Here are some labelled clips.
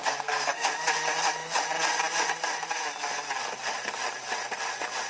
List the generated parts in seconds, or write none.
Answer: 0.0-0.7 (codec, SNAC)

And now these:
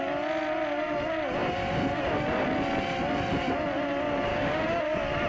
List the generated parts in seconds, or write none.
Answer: 4.3-4.8 (codec, DAC)

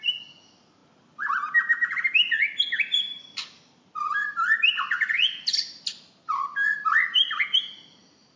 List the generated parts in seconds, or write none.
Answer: none

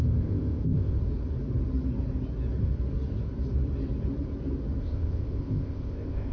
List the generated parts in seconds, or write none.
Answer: 0.0-1.0 (codec, ZipCodec); 4.8-6.3

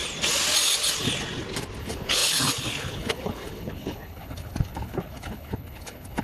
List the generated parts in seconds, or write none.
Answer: 1.8-6.2 (codec, HILCodec)

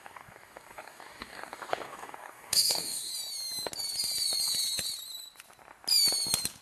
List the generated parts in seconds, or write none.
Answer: 0.0-3.1 (codec, DAC)

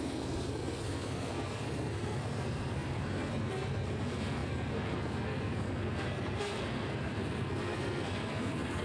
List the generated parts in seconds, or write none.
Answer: 0.0-8.8 (codec, SNAC)

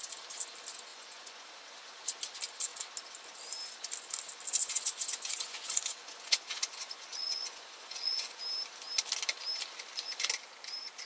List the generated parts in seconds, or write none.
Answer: 0.9-1.5 (vocoder, Vocos); 4.6-8.4